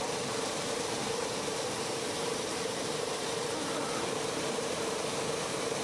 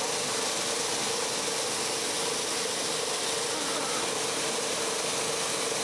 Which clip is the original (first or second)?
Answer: second